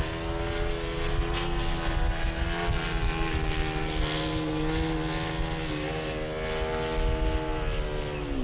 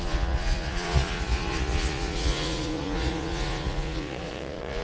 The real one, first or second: first